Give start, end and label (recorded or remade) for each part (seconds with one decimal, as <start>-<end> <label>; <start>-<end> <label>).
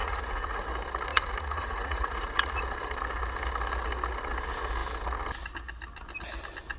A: 0.0-0.6 remade; 0.6-1.1 recorded; 1.1-2.6 remade; 2.6-6.8 recorded